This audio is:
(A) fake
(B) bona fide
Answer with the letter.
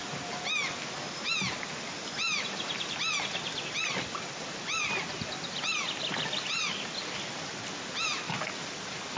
B